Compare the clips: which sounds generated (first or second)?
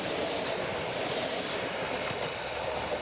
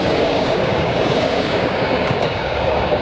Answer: second